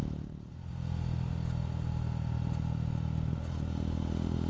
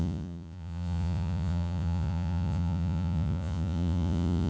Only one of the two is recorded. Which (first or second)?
first